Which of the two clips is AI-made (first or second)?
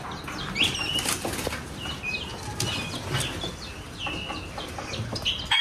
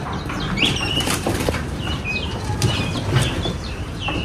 second